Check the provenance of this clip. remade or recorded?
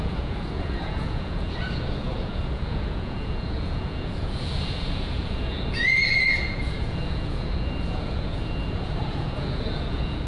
remade